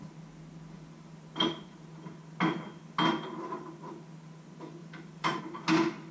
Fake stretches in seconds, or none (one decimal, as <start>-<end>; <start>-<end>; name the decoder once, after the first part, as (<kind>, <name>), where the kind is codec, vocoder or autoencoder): 4.8-5.4 (vocoder, BigVGAN v2)